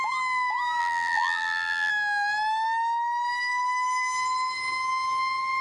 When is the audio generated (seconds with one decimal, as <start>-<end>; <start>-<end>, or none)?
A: 0.8-1.9